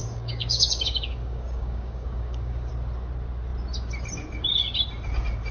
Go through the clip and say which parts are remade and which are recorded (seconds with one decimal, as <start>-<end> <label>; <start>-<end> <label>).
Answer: 0.0-2.7 remade; 2.7-5.5 recorded